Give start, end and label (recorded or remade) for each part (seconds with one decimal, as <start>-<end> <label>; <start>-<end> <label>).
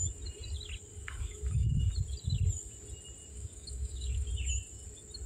0.0-0.9 recorded; 0.9-1.9 remade; 1.9-3.3 recorded; 3.3-4.3 remade; 4.3-5.3 recorded